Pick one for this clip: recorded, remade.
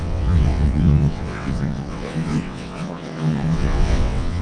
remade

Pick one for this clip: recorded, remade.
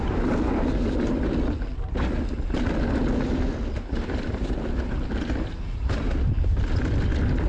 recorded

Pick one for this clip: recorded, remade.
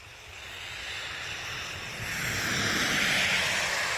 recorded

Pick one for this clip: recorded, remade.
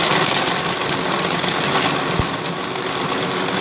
recorded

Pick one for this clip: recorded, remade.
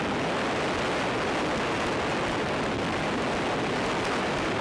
recorded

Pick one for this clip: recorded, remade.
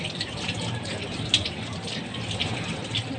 remade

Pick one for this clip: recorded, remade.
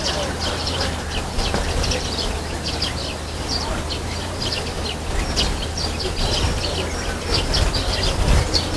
recorded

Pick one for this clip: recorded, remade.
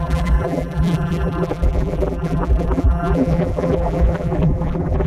remade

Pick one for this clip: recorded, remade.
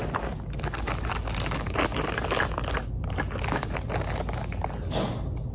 recorded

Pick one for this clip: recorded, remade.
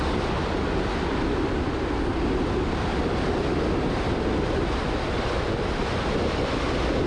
recorded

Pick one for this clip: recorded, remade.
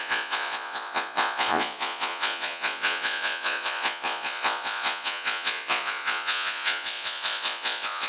remade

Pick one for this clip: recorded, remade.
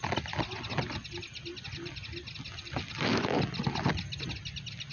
recorded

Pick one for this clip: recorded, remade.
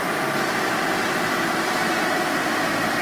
recorded